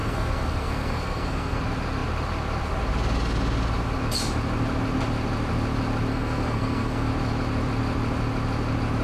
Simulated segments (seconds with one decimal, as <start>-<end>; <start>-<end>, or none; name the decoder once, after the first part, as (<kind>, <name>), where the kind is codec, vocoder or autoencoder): 0.0-1.6 (codec, SNAC); 6.1-7.1